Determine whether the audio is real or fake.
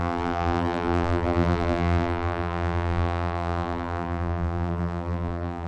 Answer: fake